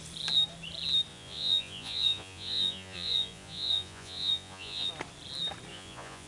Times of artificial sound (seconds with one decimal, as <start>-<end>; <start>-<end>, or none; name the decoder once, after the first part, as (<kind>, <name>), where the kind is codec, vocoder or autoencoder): 1.1-4.9 (vocoder, Vocos); 5.7-6.3